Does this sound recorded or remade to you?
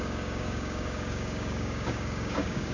remade